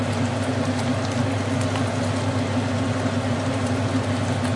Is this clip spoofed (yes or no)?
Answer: no